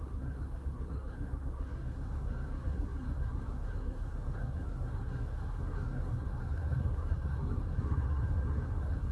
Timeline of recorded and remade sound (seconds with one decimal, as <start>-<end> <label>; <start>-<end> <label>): 0.0-9.1 remade